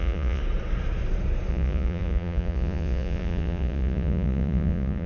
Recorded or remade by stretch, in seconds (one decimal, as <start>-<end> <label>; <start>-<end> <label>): 0.0-0.4 remade; 0.4-1.5 recorded; 1.5-5.1 remade